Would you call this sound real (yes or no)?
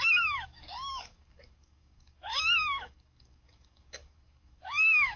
no